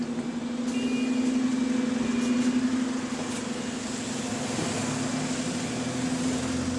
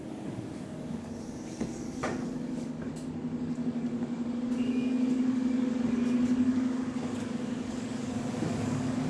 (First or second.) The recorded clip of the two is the first